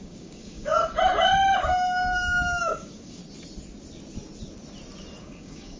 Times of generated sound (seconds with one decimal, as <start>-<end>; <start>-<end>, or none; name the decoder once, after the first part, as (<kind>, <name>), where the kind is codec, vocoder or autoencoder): 0.0-0.7 (codec, DAC); 1.6-3.2; 5.2-5.8